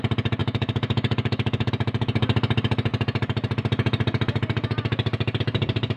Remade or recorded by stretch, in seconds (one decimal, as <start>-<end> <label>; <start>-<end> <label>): 0.0-0.4 recorded; 0.4-1.7 remade; 1.7-6.0 recorded